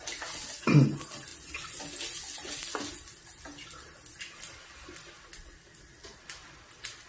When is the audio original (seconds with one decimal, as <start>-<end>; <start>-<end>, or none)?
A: 0.0-7.1